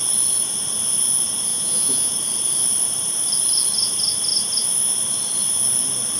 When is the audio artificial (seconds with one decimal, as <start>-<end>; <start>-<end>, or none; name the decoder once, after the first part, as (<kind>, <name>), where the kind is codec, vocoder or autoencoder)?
1.5-2.1 (vocoder, Vocos)